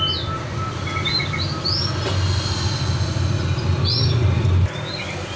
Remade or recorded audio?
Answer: recorded